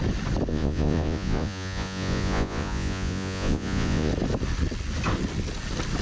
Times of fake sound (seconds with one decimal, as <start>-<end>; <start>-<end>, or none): 0.5-4.1